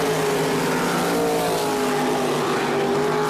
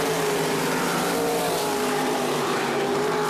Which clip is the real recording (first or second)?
first